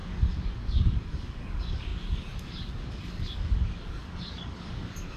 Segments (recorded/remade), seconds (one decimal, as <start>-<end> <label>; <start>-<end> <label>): 0.0-5.2 remade